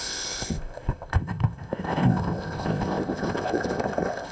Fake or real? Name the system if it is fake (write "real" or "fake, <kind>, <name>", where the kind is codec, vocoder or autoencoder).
fake, codec, ZipCodec